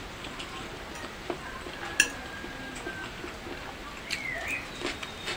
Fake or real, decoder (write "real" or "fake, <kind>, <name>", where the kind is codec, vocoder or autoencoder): real